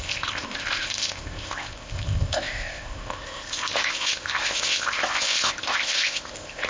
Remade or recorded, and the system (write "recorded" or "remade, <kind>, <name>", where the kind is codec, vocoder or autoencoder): remade, codec, ZipCodec